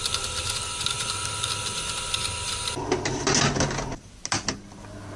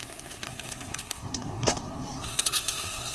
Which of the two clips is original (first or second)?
first